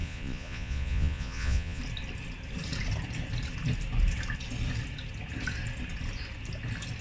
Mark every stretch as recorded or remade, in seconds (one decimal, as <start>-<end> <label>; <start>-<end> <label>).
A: 0.0-1.8 remade; 1.8-7.0 recorded